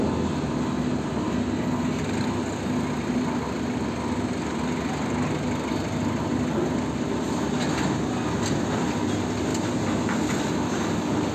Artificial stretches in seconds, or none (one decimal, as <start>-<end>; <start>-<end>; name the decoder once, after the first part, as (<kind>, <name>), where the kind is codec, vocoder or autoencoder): none